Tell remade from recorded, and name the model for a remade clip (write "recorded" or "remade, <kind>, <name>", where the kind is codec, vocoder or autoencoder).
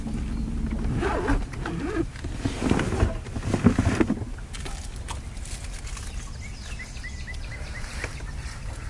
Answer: recorded